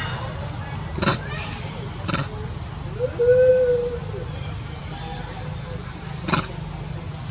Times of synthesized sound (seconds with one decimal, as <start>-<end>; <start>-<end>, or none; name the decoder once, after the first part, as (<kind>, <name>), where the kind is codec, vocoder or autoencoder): 1.1-1.7 (vocoder, BigVGAN v2); 3.5-6.0